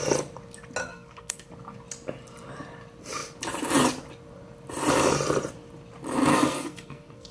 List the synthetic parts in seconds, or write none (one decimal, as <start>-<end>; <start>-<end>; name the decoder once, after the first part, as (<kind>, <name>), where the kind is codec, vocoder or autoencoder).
0.8-1.5 (codec, SNAC); 6.3-7.3

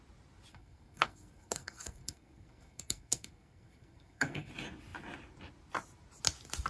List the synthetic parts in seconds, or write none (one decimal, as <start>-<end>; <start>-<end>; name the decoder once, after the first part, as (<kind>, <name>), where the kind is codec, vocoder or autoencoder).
0.5-4.5 (codec, SNAC)

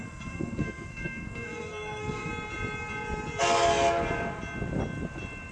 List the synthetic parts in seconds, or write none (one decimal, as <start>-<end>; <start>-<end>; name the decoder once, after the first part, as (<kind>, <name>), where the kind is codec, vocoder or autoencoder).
0.0-2.3 (codec, SNAC)

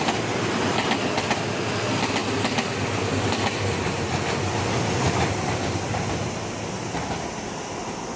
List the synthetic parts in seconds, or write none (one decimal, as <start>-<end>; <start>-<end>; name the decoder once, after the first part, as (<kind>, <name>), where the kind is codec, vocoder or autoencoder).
none

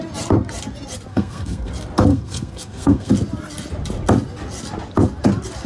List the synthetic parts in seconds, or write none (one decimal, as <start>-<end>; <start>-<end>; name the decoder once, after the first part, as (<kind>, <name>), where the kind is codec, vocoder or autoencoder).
1.1-1.7 (codec, SNAC); 2.1-3.1

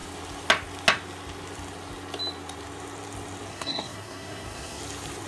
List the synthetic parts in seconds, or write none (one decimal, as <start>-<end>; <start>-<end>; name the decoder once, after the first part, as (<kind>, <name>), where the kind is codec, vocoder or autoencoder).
3.5-4.8 (codec, SNAC)

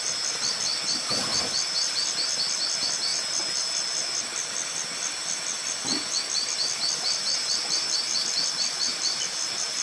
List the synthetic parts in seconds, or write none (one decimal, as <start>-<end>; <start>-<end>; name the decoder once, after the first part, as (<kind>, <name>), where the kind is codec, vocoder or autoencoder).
none

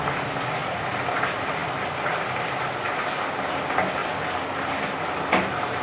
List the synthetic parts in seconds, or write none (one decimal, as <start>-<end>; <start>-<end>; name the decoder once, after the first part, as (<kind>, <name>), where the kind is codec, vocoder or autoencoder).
none